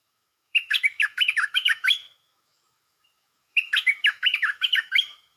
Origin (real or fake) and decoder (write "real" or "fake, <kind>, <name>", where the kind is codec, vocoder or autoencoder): fake, autoencoder, DAC-VAE